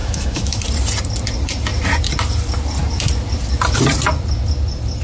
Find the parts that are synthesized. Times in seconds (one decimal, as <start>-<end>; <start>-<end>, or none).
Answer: 0.0-0.6